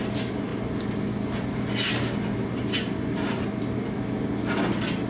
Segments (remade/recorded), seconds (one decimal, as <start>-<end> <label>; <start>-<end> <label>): 0.0-5.1 recorded